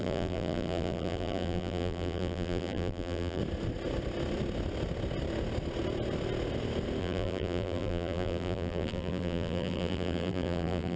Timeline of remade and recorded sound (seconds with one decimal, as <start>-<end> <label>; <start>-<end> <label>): 0.0-3.4 remade; 3.4-7.0 recorded; 7.0-11.0 remade